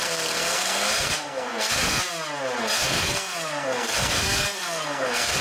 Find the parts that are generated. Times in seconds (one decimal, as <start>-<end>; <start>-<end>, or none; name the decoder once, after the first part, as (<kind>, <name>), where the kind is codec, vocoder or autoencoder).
0.0-2.0 (codec, SNAC); 2.6-5.4